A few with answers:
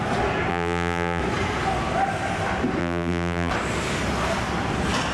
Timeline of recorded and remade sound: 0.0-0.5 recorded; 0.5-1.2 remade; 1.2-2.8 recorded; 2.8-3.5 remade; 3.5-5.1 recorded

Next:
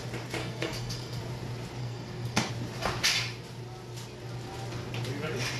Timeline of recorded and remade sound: 0.0-0.4 recorded; 0.4-1.2 remade; 1.2-1.8 recorded; 1.8-2.5 remade; 2.5-5.6 recorded

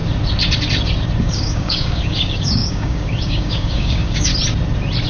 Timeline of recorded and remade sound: 0.0-1.2 recorded; 1.2-4.3 remade; 4.3-5.1 recorded